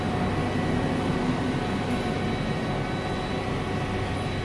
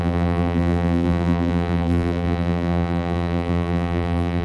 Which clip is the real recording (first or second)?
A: first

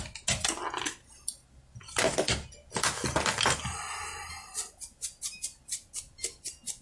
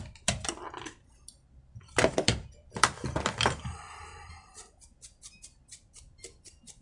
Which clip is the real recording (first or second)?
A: first